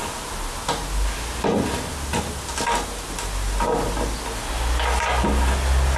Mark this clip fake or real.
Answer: real